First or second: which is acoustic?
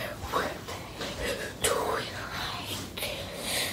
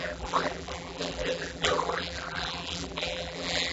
first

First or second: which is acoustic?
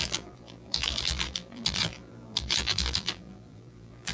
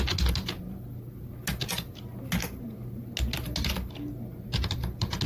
second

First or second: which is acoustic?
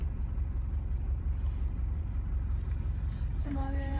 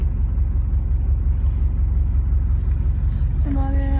second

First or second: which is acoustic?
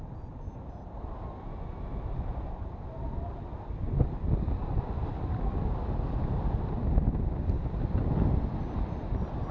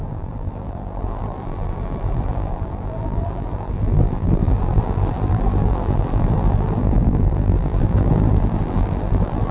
first